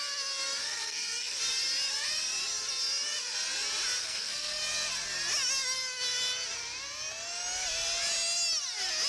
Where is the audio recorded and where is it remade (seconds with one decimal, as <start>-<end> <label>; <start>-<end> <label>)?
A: 0.0-0.6 recorded; 0.6-1.4 remade; 1.4-4.0 recorded; 4.0-4.6 remade; 4.6-9.1 recorded